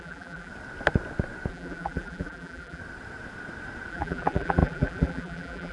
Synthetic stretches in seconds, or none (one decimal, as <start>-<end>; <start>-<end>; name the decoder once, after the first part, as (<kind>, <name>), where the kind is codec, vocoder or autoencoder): 0.0-0.5 (vocoder, BigVGAN v2); 1.5-2.8; 3.9-5.7